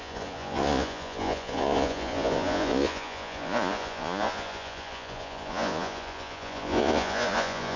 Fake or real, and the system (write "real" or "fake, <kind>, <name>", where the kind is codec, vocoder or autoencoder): fake, vocoder, Vocos